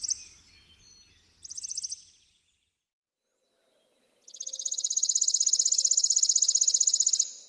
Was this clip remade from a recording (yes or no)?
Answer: no